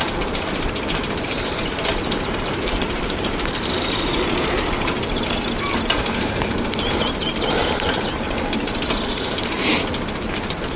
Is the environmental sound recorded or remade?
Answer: remade